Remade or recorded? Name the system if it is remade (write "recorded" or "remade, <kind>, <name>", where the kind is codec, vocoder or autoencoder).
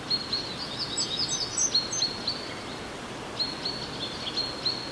recorded